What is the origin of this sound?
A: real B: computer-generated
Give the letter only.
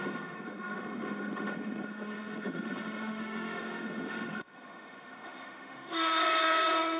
B